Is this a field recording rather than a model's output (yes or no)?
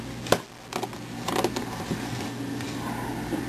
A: yes